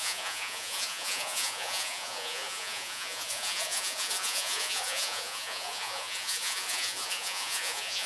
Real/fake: fake